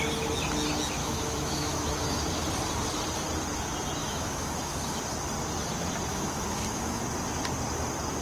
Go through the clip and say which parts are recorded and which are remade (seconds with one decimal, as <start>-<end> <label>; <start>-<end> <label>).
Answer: 0.0-1.0 recorded; 1.0-2.2 remade; 2.2-4.0 recorded; 4.0-5.0 remade; 5.0-6.1 recorded; 6.1-7.0 remade; 7.0-8.2 recorded

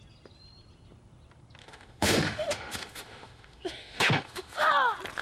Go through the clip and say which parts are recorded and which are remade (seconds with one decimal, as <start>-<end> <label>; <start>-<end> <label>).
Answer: 0.0-1.6 recorded; 1.6-4.7 remade; 4.7-5.2 recorded